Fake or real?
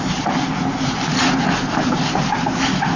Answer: real